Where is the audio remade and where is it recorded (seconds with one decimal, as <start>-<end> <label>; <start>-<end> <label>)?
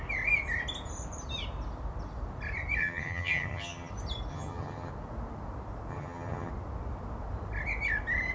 0.0-2.8 recorded; 2.8-3.9 remade; 3.9-4.3 recorded; 4.3-4.9 remade; 4.9-5.9 recorded; 5.9-6.5 remade; 6.5-8.3 recorded